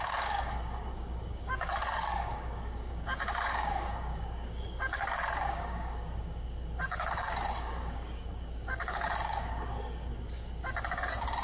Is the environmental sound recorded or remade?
remade